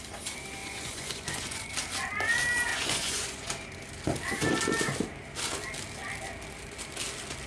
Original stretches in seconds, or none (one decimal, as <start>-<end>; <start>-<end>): 0.0-0.6; 1.7-2.7; 3.5-7.5